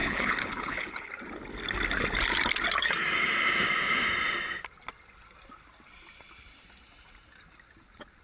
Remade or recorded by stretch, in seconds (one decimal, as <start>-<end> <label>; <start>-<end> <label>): 0.0-1.1 remade; 1.1-8.2 recorded